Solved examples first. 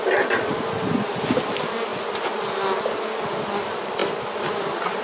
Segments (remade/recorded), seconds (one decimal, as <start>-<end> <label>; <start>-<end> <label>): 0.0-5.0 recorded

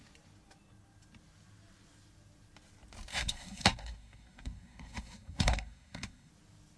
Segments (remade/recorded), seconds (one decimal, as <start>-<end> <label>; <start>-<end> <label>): 0.0-3.1 recorded; 3.1-6.3 remade; 6.3-6.8 recorded

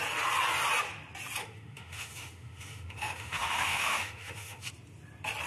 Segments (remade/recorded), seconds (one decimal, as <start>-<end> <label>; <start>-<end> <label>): 0.0-1.4 recorded; 1.4-4.7 remade; 4.7-5.5 recorded

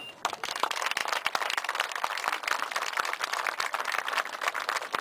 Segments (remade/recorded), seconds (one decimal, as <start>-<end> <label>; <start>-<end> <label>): 0.0-5.0 recorded